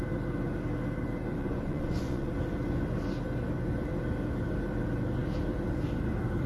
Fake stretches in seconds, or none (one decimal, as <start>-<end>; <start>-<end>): 1.4-2.3

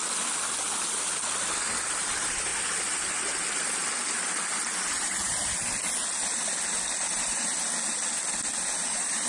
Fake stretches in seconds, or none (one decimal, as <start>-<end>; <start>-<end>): 1.9-2.5; 4.9-5.6; 7.0-7.5; 8.9-9.3

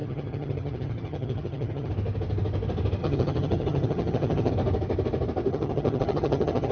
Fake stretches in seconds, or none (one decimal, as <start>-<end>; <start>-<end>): 0.0-1.9; 3.0-4.5; 5.5-6.7